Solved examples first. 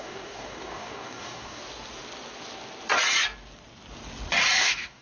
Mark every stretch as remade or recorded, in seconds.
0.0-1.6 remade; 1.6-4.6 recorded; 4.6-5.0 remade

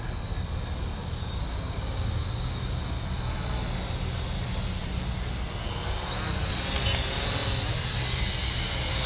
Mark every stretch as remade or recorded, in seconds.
0.0-1.0 recorded; 1.0-2.8 remade; 2.8-9.1 recorded